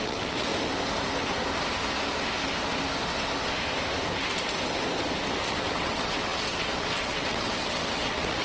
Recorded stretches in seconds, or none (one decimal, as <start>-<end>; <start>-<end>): 0.5-5.5